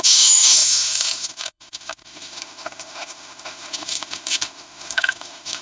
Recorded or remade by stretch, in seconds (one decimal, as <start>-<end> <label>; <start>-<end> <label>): 0.0-5.6 remade